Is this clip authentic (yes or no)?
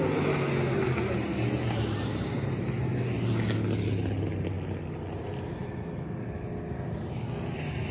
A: yes